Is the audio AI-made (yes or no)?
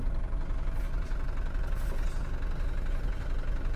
yes